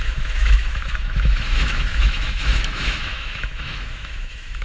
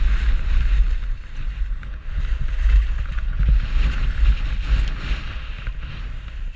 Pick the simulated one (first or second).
first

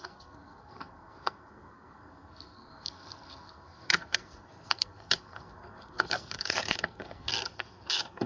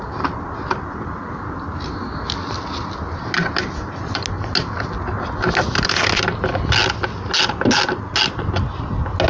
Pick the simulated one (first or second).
first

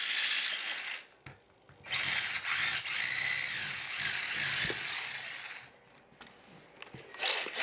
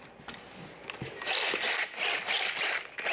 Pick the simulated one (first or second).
second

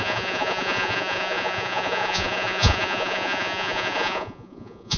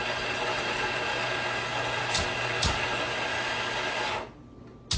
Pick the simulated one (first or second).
first